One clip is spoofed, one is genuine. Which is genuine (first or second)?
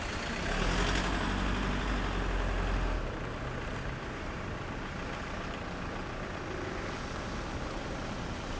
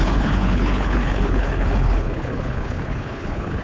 first